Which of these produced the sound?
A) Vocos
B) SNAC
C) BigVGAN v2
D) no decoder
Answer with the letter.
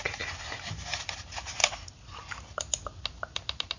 D